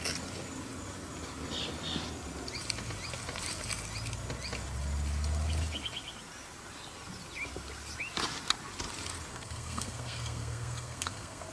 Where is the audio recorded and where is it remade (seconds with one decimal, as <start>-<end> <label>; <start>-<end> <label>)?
0.0-9.3 recorded; 9.3-11.5 remade